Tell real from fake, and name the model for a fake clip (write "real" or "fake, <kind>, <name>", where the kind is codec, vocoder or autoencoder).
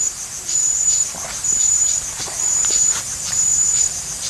fake, vocoder, BigVGAN v2